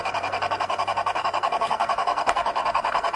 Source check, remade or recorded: remade